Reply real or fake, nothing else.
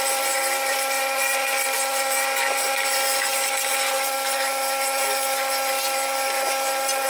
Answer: real